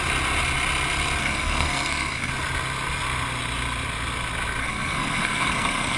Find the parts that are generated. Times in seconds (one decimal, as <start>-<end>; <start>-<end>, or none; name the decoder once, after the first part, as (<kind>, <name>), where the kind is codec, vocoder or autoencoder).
1.2-2.3 (codec, SNAC); 4.6-6.0